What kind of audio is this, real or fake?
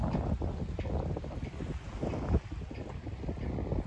real